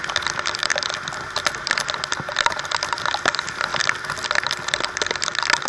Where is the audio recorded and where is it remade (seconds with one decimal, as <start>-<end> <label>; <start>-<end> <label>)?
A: 0.0-5.7 recorded